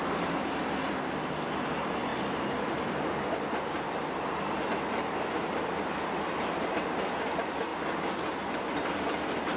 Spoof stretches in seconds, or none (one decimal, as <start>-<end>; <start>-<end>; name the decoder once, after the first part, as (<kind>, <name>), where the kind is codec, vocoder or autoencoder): none